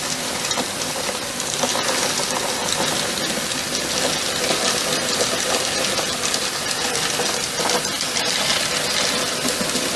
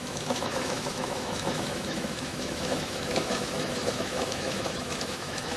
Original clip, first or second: first